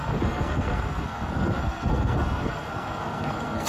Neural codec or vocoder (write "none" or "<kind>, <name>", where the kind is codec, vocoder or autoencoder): codec, SNAC